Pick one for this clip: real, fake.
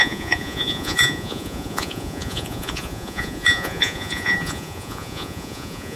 fake